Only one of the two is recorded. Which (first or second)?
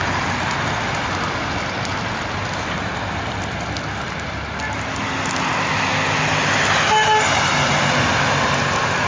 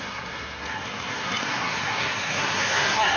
first